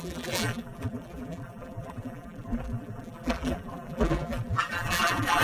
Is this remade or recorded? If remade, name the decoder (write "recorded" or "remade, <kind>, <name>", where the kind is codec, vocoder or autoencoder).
remade, vocoder, BigVGAN v2